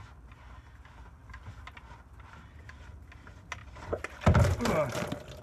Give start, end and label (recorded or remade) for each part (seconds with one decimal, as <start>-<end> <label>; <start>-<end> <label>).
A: 0.0-3.6 recorded; 3.6-4.1 remade; 4.1-5.4 recorded